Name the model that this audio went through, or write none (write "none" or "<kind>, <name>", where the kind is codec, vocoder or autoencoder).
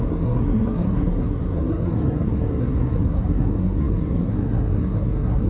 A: codec, SNAC